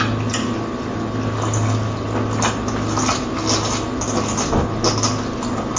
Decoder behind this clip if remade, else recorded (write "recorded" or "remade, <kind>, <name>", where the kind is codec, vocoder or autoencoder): recorded